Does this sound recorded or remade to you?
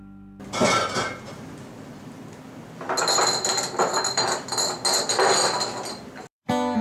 recorded